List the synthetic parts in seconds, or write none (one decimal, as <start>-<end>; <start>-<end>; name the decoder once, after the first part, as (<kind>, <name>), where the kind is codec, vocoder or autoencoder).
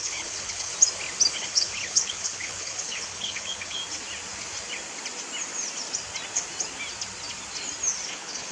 0.0-0.7 (codec, HILCodec); 1.3-3.8; 8.1-8.5